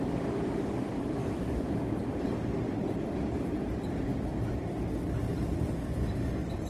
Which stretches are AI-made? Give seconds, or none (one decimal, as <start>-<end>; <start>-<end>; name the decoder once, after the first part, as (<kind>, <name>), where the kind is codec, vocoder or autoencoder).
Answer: 1.2-4.3 (vocoder, BigVGAN v2)